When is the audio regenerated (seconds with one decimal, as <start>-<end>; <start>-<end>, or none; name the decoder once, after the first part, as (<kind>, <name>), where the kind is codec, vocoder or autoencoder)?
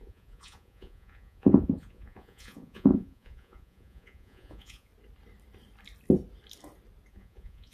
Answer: 0.0-4.9 (vocoder, Vocos); 7.1-7.7